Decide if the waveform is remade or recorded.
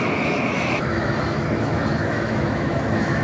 remade